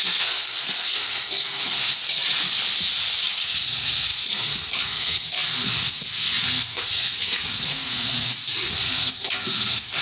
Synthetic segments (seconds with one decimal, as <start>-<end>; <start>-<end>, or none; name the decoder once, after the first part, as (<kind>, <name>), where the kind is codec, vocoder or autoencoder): 0.0-2.0 (codec, SNAC); 3.3-10.0